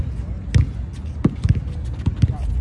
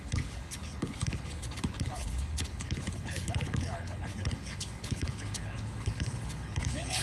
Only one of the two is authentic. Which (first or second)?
first